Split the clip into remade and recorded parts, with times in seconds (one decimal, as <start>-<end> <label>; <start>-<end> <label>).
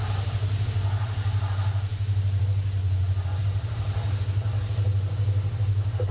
0.0-2.8 recorded; 2.8-3.4 remade; 3.4-6.1 recorded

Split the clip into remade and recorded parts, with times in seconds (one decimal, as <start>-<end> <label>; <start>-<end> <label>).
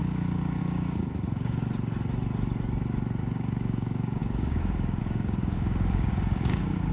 0.0-1.6 remade; 1.6-3.2 recorded; 3.2-6.9 remade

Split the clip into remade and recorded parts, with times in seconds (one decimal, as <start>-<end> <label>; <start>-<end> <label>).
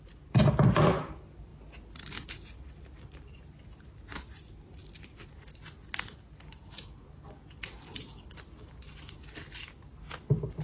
0.0-10.6 recorded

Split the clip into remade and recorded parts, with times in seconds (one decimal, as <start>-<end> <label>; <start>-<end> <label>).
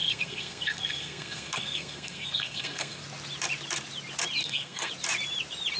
0.0-3.0 remade; 3.0-4.4 recorded; 4.4-4.9 remade; 4.9-5.8 recorded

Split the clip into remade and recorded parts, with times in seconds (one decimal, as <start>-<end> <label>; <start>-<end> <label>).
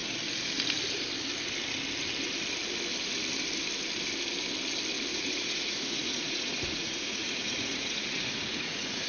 0.0-5.1 recorded; 5.1-9.1 remade